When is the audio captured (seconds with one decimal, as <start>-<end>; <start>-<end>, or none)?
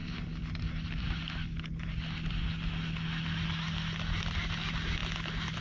0.0-5.6